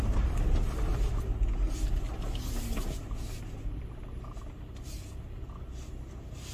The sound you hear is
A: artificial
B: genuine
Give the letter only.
B